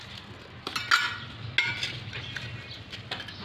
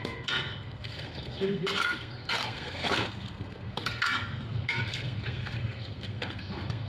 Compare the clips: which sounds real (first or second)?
first